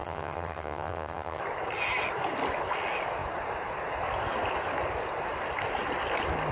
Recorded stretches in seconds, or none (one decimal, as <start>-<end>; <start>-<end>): 1.4-6.5